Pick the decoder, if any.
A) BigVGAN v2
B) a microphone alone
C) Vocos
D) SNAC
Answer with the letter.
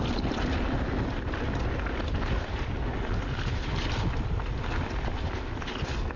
B